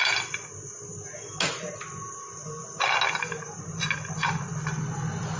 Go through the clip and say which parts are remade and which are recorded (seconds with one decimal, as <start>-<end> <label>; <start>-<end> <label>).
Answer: 0.0-5.4 recorded